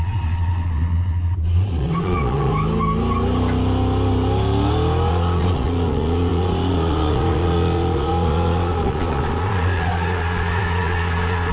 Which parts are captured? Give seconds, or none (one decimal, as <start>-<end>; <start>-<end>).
2.5-5.1